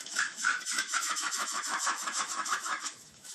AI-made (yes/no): yes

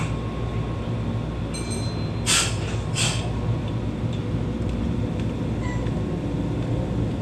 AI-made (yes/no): no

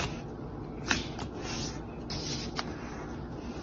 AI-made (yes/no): no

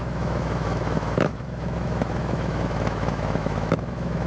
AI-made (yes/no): yes